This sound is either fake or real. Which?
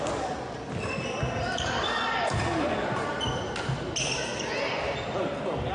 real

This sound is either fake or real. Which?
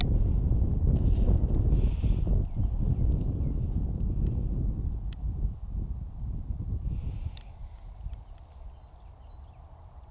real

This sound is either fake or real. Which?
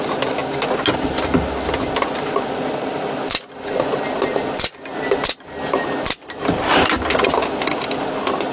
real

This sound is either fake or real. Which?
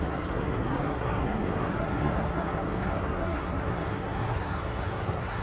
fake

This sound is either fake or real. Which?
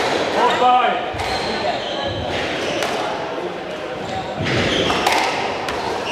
fake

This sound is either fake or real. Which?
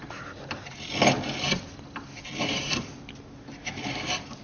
real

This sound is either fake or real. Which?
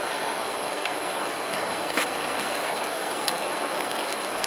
fake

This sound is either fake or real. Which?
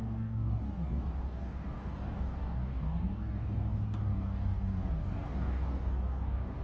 fake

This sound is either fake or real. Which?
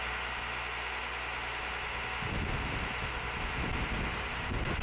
real